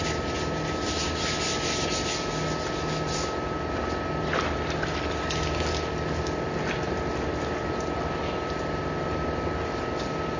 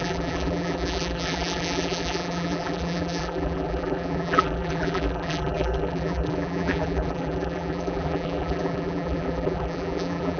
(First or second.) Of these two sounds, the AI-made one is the second